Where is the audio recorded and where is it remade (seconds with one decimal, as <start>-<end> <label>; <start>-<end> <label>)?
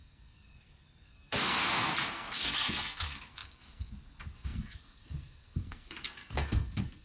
0.0-7.0 remade